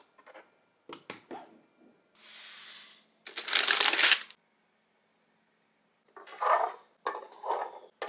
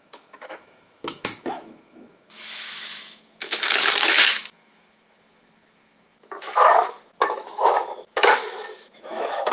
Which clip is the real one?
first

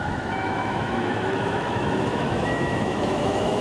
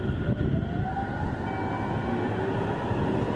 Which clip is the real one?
second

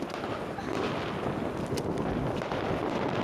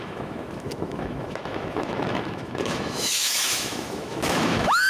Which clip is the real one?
first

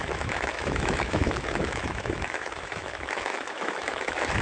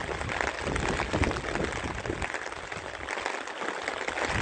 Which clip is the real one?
second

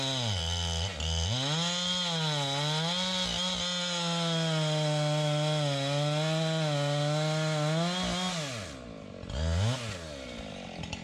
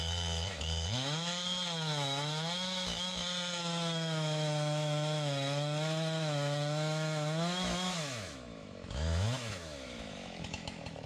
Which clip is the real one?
first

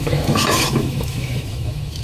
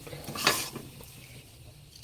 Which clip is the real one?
second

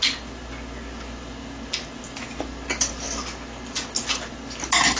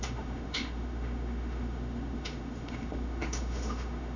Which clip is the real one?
first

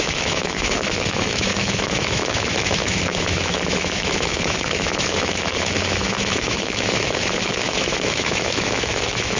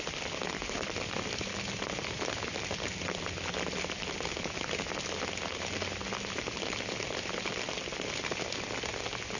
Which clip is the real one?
second